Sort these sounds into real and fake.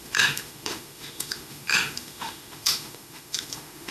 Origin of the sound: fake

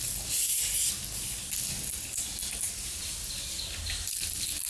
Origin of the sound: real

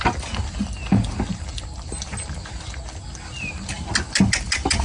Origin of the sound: real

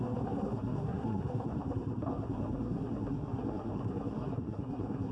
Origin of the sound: fake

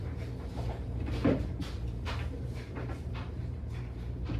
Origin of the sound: fake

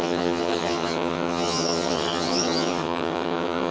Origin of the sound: fake